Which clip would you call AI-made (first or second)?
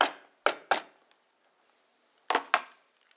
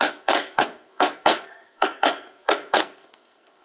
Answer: second